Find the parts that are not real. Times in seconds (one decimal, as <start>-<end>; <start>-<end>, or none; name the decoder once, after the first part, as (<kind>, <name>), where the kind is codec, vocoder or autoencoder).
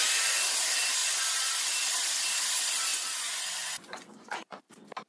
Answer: 1.0-1.5 (vocoder, Vocos); 2.9-4.6